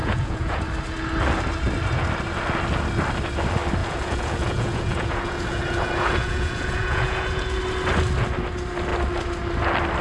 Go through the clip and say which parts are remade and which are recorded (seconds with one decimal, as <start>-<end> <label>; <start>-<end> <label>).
0.0-0.6 remade; 0.6-3.8 recorded; 3.8-7.6 remade; 7.6-10.0 recorded